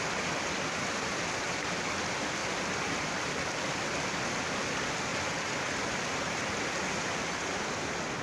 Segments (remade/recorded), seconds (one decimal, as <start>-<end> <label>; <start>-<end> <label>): 0.0-8.2 recorded